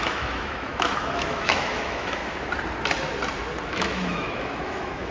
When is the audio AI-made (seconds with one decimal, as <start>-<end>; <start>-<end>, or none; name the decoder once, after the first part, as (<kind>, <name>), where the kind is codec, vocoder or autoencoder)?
0.0-2.2 (autoencoder, DAC-VAE); 3.7-5.1